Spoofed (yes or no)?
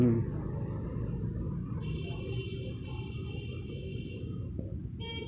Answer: no